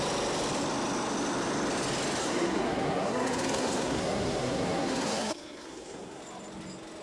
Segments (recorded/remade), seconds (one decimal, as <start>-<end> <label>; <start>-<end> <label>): 0.0-2.2 recorded; 2.2-6.2 remade; 6.2-7.0 recorded